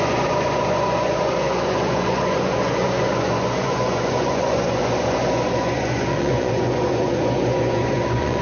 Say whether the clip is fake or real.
fake